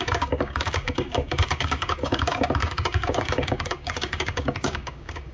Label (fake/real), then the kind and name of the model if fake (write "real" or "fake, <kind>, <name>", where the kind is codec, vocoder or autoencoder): fake, codec, DAC